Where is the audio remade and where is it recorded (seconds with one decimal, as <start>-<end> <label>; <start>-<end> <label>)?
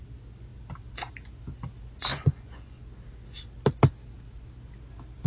0.0-2.1 recorded; 2.1-2.8 remade; 2.8-5.3 recorded